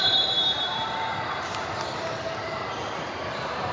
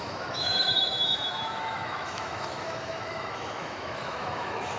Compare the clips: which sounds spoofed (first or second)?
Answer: second